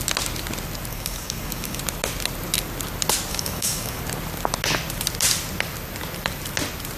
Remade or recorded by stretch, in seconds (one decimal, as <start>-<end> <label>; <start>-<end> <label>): 0.0-0.9 recorded; 0.9-1.8 remade; 1.8-3.3 recorded; 3.3-4.0 remade; 4.0-7.0 recorded